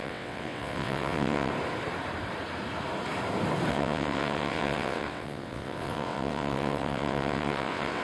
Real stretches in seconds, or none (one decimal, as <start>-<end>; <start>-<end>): 1.5-3.7